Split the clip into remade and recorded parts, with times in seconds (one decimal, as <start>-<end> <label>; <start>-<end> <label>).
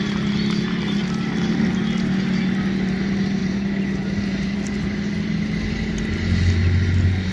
0.0-7.3 recorded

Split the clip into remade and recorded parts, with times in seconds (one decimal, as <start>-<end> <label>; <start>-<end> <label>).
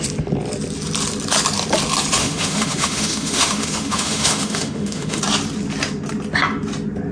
0.0-2.2 recorded; 2.2-5.2 remade; 5.2-7.1 recorded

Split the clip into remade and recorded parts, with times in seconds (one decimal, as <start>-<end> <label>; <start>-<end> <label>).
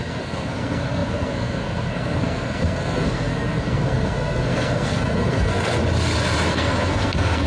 0.0-5.8 remade; 5.8-6.5 recorded; 6.5-7.5 remade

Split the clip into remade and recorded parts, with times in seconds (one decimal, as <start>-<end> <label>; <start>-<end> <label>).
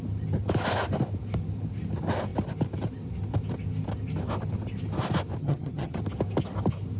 0.0-5.4 recorded; 5.4-6.0 remade; 6.0-7.0 recorded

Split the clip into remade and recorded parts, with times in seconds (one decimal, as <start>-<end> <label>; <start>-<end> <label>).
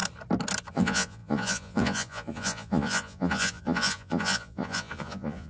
0.0-0.7 recorded; 0.7-5.5 remade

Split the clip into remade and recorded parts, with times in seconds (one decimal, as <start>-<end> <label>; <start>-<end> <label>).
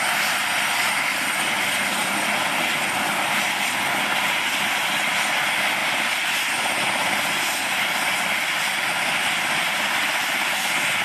0.0-2.0 recorded; 2.0-2.6 remade; 2.6-11.0 recorded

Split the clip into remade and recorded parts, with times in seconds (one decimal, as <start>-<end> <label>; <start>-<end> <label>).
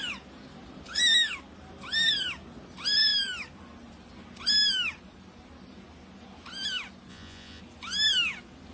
0.0-7.1 recorded; 7.1-7.6 remade; 7.6-8.7 recorded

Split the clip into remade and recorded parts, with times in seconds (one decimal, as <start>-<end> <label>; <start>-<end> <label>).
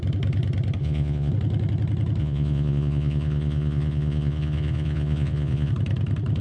0.0-0.8 recorded; 0.8-1.3 remade; 1.3-2.2 recorded; 2.2-5.7 remade; 5.7-6.4 recorded